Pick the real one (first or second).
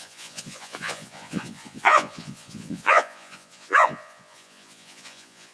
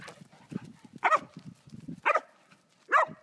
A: second